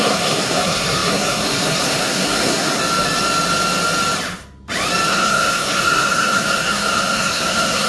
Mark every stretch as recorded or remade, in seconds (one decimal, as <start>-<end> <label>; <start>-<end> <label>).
0.0-2.8 remade; 2.8-5.1 recorded; 5.1-7.9 remade